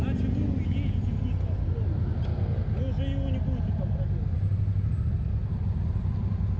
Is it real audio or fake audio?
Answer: real